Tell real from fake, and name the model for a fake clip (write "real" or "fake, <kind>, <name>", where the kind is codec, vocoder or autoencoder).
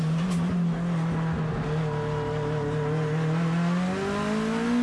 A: real